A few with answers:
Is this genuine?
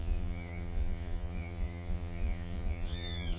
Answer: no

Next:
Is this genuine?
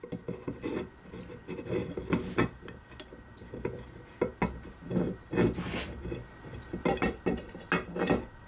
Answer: yes